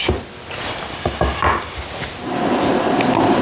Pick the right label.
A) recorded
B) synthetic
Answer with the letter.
A